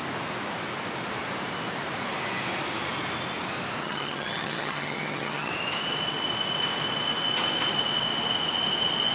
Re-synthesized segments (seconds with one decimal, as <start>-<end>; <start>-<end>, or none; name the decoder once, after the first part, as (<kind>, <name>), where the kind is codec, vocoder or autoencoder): 3.8-5.5 (vocoder, HiFi-GAN)